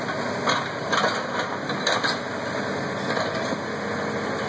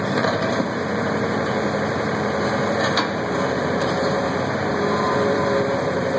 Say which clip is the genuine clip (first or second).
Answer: first